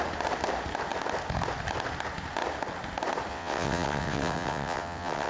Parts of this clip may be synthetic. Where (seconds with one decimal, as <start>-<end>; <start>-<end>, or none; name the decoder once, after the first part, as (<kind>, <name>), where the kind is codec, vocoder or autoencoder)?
3.3-5.3 (vocoder, WaveNeXt)